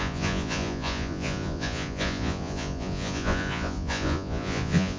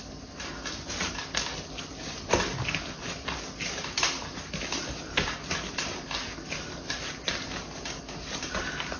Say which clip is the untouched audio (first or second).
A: second